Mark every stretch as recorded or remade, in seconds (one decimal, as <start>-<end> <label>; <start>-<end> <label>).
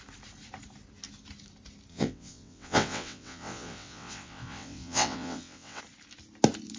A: 0.0-1.9 recorded; 1.9-5.8 remade; 5.8-6.8 recorded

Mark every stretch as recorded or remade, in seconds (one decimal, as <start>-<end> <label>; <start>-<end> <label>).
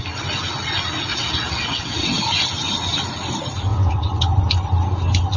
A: 0.0-1.1 recorded; 1.1-2.2 remade; 2.2-3.7 recorded; 3.7-4.3 remade; 4.3-5.4 recorded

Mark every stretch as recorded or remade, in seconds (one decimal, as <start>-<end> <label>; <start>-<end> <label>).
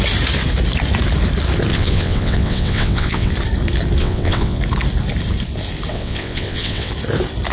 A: 0.0-1.7 recorded; 1.7-3.3 remade; 3.3-4.0 recorded; 4.0-4.6 remade; 4.6-5.9 recorded; 5.9-6.9 remade; 6.9-7.5 recorded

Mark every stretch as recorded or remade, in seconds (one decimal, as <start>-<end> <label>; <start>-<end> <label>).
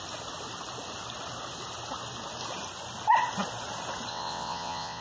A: 0.0-4.1 recorded; 4.1-5.0 remade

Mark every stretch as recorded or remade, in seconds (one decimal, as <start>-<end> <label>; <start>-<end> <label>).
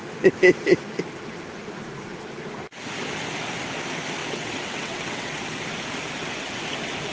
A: 0.0-4.2 recorded; 4.2-5.4 remade; 5.4-7.1 recorded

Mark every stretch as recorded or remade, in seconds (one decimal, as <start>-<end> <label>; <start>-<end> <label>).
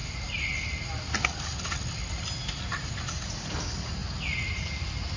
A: 0.0-5.2 recorded